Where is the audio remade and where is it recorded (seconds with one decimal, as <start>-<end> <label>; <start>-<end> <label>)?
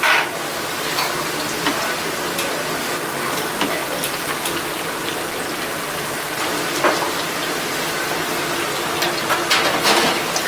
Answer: 0.0-10.5 recorded